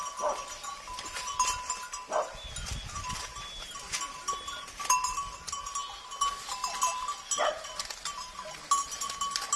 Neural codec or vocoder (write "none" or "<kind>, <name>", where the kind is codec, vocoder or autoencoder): none